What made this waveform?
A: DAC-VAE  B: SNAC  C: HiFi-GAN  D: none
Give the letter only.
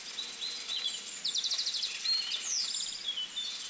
D